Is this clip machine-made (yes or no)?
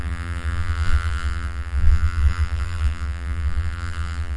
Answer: yes